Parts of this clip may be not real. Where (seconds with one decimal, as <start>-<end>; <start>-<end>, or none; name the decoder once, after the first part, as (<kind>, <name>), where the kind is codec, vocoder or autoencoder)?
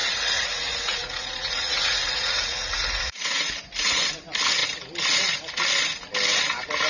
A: 0.0-4.1 (vocoder, Vocos)